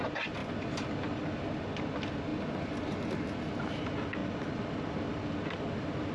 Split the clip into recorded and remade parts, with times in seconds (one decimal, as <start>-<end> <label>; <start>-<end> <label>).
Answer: 0.0-6.1 recorded